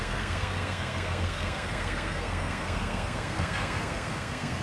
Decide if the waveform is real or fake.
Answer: fake